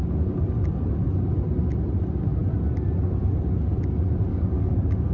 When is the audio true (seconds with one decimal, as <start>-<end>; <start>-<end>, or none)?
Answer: 0.0-4.3